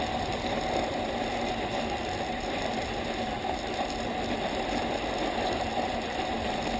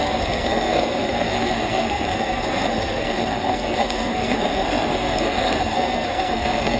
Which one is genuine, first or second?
first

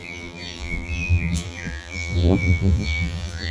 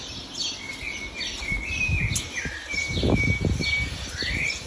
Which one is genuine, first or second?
second